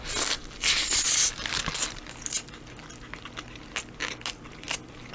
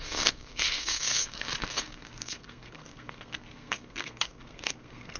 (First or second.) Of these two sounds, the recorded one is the first